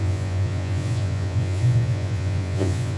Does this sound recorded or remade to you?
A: remade